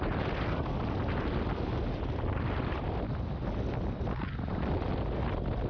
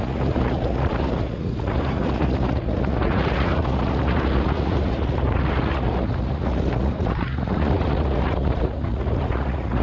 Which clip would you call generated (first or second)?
second